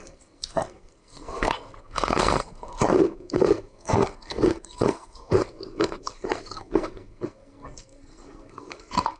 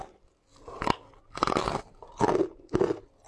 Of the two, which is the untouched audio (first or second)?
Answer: second